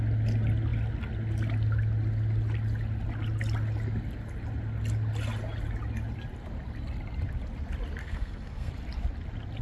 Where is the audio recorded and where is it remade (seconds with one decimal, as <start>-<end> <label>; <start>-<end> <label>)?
0.0-8.0 recorded; 8.0-8.7 remade; 8.7-9.6 recorded